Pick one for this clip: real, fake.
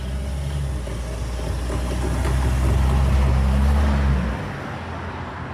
real